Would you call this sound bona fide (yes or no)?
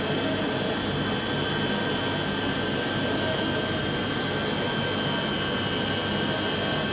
yes